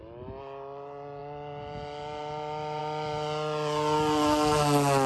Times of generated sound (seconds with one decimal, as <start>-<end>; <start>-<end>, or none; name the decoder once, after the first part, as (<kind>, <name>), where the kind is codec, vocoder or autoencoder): none